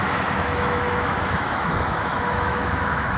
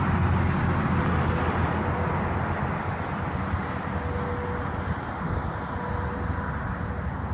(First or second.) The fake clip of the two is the first